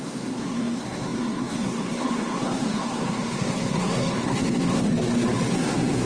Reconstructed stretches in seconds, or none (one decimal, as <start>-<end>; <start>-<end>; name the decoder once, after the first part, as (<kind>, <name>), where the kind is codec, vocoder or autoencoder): 0.0-4.9 (codec, SNAC); 5.5-6.1